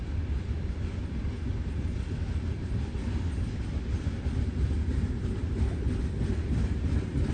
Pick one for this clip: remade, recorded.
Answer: recorded